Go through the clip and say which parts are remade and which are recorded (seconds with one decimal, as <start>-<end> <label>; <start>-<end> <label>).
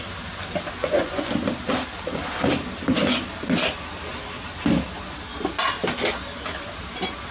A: 0.0-0.8 recorded; 0.8-1.3 remade; 1.3-7.3 recorded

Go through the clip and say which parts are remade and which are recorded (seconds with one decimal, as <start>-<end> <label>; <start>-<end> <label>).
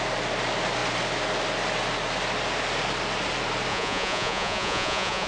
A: 0.0-3.7 recorded; 3.7-5.3 remade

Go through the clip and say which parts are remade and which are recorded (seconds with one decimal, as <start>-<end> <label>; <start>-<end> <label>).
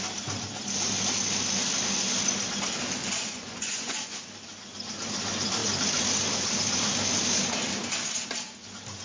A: 0.0-3.0 recorded; 3.0-4.2 remade; 4.2-9.0 recorded